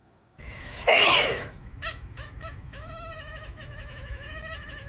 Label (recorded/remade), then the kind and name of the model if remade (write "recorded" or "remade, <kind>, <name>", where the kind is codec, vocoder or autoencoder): remade, autoencoder, DAC-VAE